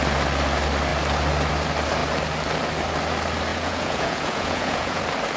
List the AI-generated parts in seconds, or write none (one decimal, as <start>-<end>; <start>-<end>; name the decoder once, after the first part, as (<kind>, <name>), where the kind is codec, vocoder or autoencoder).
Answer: 3.5-5.0 (vocoder, Vocos)